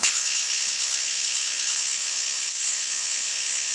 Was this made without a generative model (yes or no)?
no